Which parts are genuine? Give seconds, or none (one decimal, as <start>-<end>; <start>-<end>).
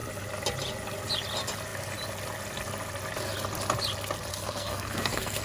0.0-4.3